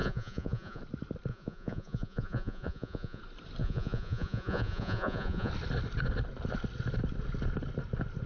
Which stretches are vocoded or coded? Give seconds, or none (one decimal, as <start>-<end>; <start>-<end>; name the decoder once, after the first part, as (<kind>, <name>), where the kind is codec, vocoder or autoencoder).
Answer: 0.0-0.8 (vocoder, Vocos); 1.3-3.2; 3.6-5.5